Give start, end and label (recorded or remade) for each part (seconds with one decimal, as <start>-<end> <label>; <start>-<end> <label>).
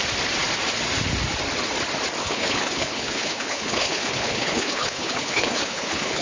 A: 0.0-2.2 recorded; 2.2-6.2 remade